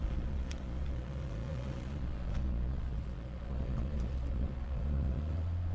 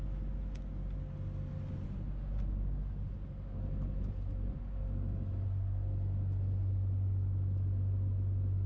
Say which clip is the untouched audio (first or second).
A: second